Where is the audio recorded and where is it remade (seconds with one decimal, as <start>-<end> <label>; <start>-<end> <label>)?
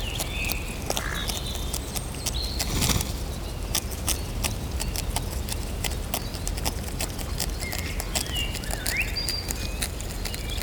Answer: 0.0-10.6 recorded